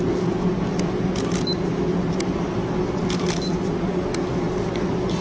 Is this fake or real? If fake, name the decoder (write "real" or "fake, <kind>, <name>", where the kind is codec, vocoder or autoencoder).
real